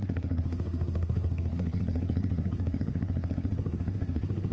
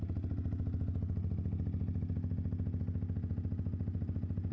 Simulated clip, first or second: first